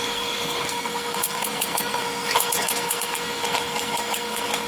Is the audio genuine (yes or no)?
no